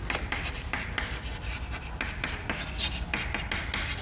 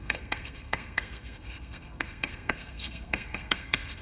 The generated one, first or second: second